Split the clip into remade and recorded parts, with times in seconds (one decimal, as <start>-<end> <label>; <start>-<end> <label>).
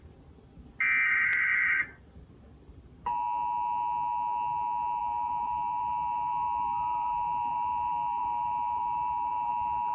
0.0-1.5 recorded; 1.5-3.0 remade; 3.0-5.0 recorded; 5.0-9.5 remade; 9.5-9.9 recorded